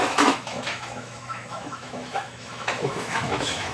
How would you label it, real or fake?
fake